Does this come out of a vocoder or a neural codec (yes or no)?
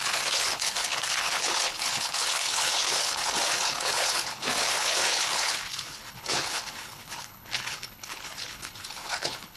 yes